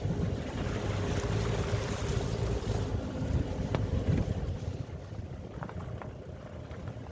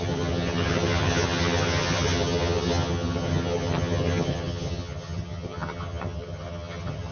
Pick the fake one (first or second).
second